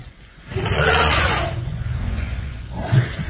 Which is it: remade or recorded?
remade